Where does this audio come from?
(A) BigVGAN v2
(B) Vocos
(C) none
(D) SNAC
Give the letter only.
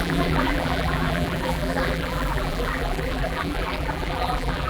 A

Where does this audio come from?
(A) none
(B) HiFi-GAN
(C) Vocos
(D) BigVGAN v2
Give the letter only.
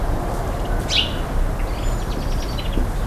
A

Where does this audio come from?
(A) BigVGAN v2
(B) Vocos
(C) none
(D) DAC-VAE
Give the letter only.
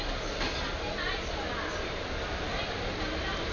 C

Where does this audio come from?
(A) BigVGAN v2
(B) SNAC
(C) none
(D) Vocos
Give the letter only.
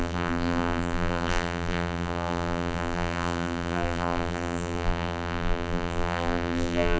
A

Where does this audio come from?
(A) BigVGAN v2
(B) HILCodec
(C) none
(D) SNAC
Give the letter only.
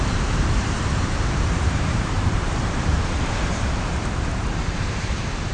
A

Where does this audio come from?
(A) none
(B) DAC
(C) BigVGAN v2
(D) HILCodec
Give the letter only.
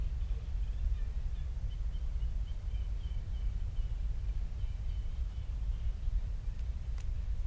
A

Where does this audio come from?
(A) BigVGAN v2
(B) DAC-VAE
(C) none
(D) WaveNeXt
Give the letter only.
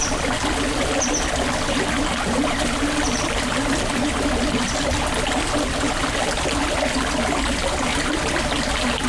C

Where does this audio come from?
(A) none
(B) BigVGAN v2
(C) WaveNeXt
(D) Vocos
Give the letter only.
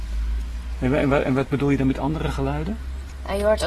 A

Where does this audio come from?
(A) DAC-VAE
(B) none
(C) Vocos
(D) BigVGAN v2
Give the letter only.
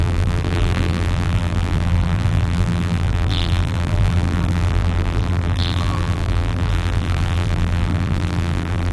D